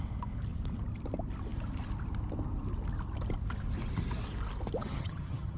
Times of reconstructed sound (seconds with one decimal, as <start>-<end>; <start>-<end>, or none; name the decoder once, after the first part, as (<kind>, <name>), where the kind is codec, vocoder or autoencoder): 4.8-5.6 (vocoder, HiFi-GAN)